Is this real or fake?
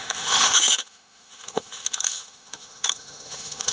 fake